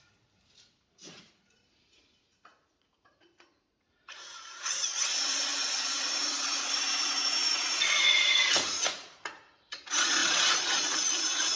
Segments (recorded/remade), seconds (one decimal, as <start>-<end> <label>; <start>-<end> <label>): 0.0-11.6 remade